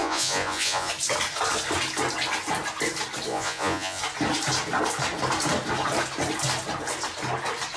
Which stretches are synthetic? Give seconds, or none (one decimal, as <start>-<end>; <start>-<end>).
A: 0.0-0.9; 3.3-4.0